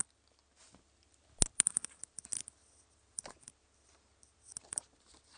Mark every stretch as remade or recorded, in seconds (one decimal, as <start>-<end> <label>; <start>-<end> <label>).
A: 0.0-5.4 recorded